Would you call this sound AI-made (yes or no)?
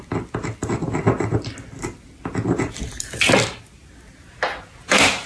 no